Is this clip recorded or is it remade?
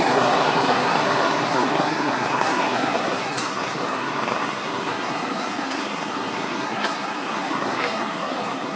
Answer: remade